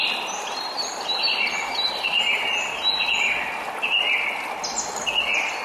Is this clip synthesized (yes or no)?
no